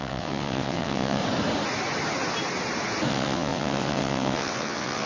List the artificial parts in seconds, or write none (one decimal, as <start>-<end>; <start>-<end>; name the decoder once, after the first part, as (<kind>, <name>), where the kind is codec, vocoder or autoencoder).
0.0-1.2 (vocoder, WaveNeXt); 3.1-5.1